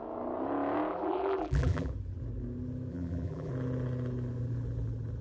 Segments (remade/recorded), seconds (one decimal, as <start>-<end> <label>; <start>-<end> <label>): 0.0-0.9 recorded; 0.9-1.9 remade; 1.9-2.9 recorded; 2.9-3.5 remade; 3.5-5.2 recorded